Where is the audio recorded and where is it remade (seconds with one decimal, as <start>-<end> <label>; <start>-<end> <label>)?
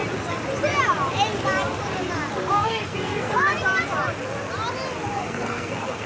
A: 0.0-2.5 recorded; 2.5-3.5 remade; 3.5-5.1 recorded; 5.1-6.1 remade